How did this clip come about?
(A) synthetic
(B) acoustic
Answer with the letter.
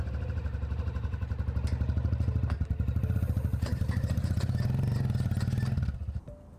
B